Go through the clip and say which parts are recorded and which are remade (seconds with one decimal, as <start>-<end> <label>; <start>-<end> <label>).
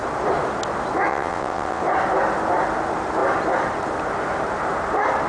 0.0-1.1 recorded; 1.1-1.8 remade; 1.8-5.3 recorded